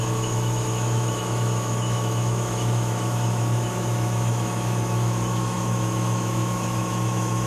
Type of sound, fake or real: fake